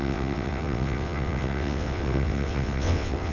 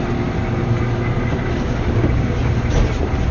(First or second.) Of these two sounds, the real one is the second